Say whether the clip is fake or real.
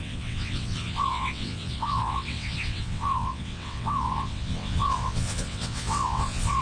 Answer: fake